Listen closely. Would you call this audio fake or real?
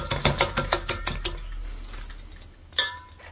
real